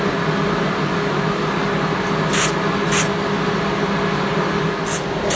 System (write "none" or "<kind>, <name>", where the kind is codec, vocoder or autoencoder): none